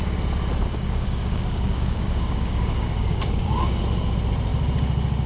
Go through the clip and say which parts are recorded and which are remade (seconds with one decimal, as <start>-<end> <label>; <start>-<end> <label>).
0.0-0.6 recorded; 0.6-3.8 remade; 3.8-5.3 recorded